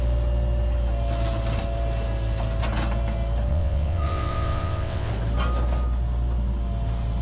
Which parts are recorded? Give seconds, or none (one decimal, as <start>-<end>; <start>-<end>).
0.0-3.5; 5.1-7.2